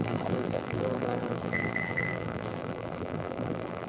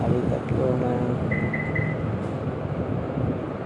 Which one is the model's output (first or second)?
first